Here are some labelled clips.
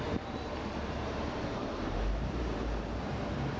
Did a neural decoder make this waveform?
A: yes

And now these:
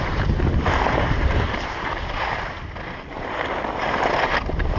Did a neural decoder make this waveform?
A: no